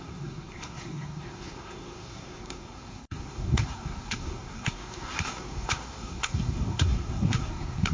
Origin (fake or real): fake